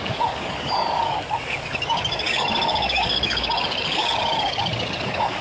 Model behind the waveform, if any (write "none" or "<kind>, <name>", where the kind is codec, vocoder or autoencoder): codec, DAC